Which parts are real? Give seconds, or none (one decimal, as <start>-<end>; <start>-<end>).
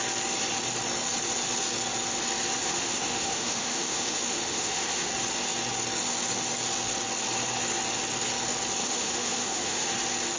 0.0-2.6; 5.1-8.8; 9.9-10.4